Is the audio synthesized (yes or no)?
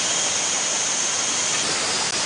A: no